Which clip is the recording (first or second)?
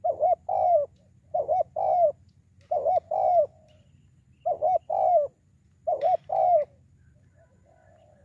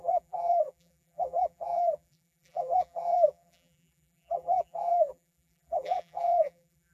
first